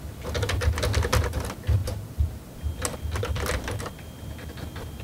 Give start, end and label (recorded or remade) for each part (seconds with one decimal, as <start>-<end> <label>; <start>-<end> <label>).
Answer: 0.0-5.0 recorded